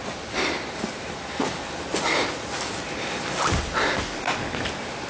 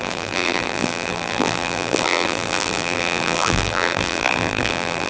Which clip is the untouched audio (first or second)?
first